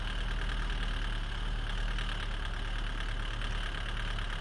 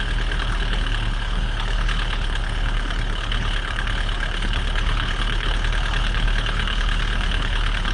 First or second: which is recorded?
first